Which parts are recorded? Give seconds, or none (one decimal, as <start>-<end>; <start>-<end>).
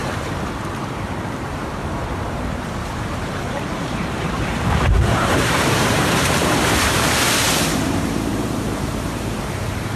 none